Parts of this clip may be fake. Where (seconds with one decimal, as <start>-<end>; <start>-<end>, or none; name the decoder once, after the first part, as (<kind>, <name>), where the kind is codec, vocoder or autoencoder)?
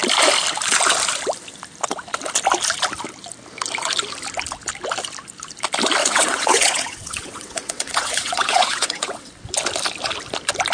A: 6.0-9.3 (vocoder, WaveNeXt)